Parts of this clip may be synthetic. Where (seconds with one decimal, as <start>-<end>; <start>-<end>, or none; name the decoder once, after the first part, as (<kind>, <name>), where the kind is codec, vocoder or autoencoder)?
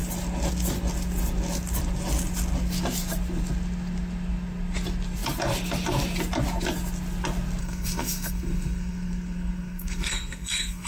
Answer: 7.6-10.9 (codec, SNAC)